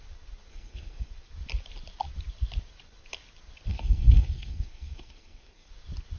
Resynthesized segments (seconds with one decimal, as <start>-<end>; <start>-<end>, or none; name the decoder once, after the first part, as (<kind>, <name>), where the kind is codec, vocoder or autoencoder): 0.5-1.1 (codec, SNAC); 3.7-5.7